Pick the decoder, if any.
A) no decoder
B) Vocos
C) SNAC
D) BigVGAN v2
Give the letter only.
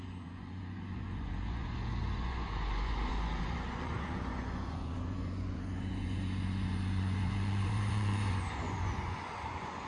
B